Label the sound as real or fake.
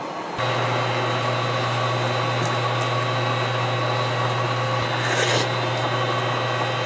real